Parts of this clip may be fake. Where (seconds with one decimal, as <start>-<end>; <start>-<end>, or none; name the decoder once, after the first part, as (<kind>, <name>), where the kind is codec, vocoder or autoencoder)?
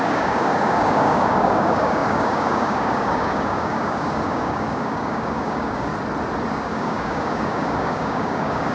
0.0-5.9 (codec, DAC); 6.5-8.7